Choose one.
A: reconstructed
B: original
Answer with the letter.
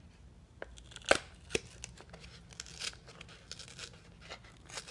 B